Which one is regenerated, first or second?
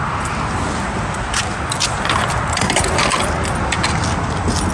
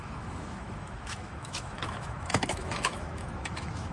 second